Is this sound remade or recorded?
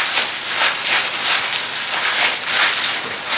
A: recorded